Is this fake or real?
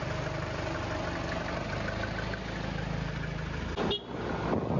real